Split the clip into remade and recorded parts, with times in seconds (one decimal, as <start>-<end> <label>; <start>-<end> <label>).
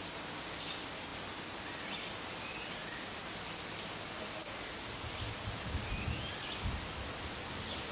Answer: 0.0-7.9 recorded